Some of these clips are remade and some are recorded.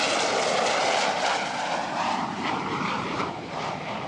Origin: recorded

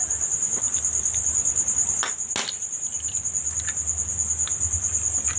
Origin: recorded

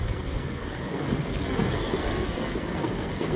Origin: remade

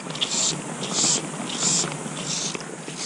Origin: recorded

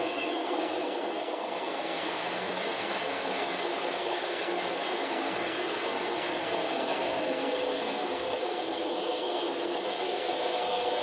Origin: remade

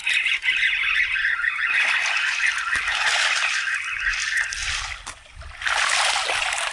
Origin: recorded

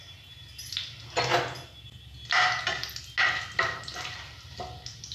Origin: recorded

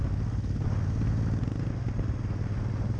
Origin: recorded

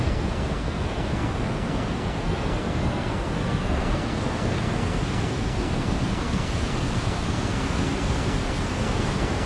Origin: remade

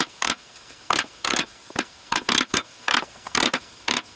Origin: remade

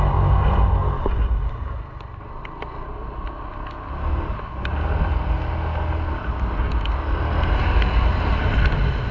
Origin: recorded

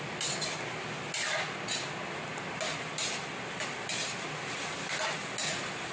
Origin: recorded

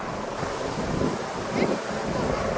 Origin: recorded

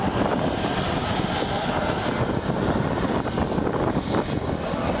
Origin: recorded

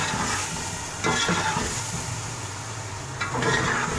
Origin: recorded